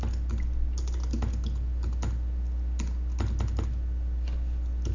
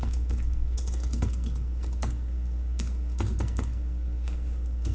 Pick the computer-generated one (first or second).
second